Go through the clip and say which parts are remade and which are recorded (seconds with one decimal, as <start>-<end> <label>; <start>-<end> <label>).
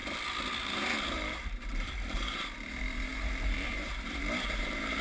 0.0-0.6 recorded; 0.6-5.0 remade